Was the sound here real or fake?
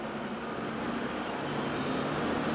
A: real